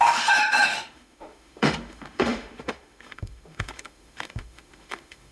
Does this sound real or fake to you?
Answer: fake